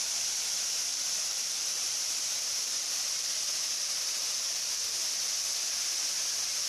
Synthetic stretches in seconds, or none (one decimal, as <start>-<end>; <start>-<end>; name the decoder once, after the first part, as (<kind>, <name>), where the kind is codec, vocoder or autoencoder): 0.9-4.9 (vocoder, BigVGAN v2)